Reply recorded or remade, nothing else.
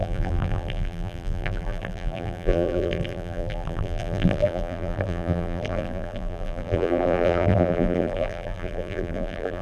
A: remade